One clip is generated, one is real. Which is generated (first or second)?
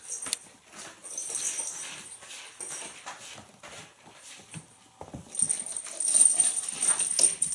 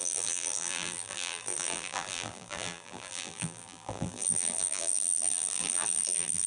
second